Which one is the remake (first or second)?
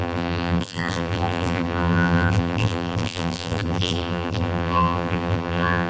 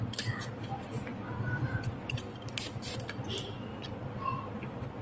first